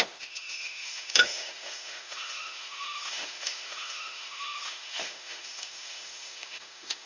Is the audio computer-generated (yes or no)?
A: yes